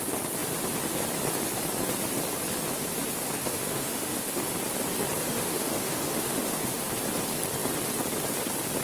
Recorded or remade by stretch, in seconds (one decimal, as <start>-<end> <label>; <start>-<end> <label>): 0.0-3.4 recorded; 3.4-4.3 remade; 4.3-5.2 recorded; 5.2-6.8 remade; 6.8-8.8 recorded